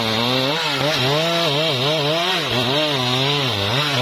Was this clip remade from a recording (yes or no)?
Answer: no